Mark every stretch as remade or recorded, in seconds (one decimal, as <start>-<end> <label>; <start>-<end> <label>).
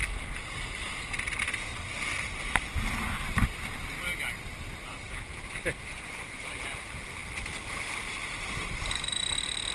0.0-5.9 recorded; 5.9-6.4 remade; 6.4-9.7 recorded